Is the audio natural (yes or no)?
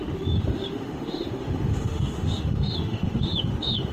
no